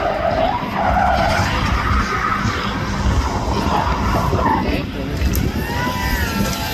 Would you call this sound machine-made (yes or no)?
no